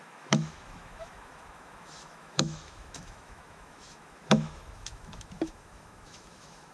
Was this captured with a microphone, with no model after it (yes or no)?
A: no